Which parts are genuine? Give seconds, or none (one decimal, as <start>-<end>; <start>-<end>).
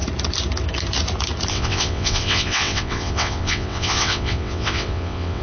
0.0-1.5